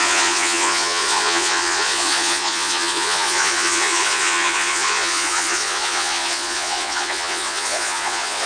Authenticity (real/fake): fake